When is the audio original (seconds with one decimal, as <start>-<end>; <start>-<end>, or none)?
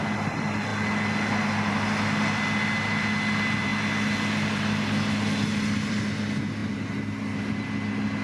0.0-8.2